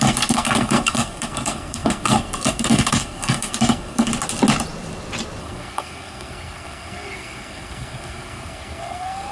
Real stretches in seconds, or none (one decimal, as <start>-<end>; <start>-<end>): 4.1-5.4